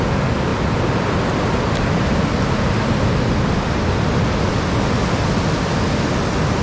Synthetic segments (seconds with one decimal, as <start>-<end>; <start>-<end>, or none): none